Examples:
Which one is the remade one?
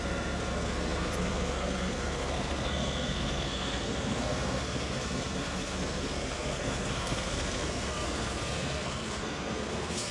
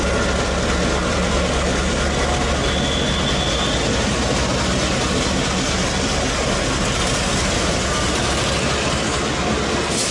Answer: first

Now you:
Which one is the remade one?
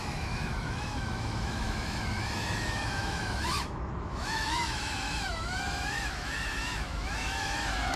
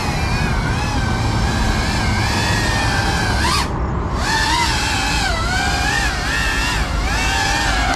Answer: first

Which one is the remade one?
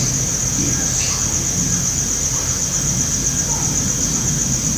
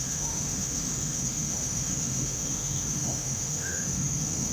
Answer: second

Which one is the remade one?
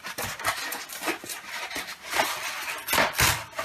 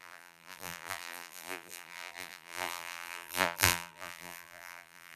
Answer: second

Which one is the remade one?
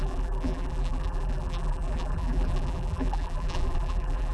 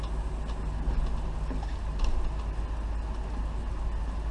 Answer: first